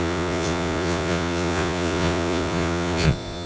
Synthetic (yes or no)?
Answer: yes